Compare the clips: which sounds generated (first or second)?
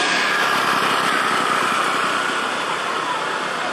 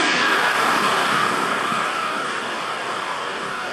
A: second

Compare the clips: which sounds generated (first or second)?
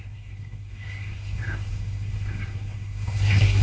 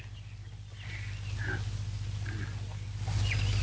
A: first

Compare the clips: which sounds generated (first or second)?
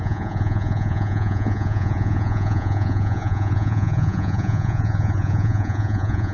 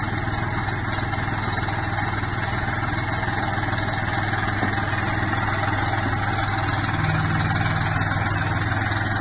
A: first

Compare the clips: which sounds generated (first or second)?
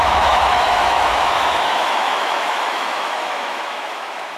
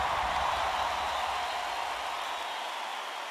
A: first